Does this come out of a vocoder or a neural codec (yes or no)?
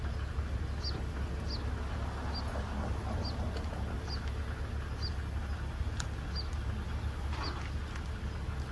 no